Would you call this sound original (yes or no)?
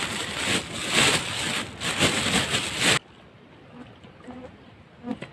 yes